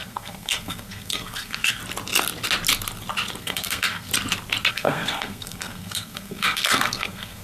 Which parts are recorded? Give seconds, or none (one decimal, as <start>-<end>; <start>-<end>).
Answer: 1.8-3.4; 4.1-4.7